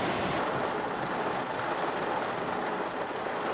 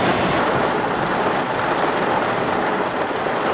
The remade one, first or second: second